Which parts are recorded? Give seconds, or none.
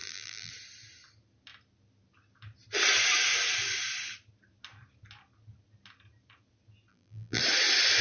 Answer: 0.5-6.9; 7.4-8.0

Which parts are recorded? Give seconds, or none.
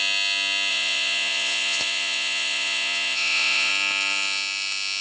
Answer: 0.0-0.7; 3.7-5.0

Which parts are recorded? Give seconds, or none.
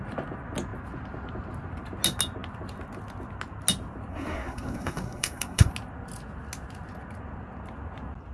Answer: 0.0-4.1; 5.7-8.3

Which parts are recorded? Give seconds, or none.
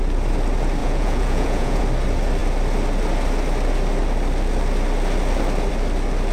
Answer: 0.0-0.8; 1.8-6.3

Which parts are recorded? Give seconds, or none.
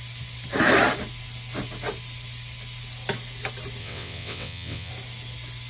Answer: 0.0-3.8; 4.9-5.7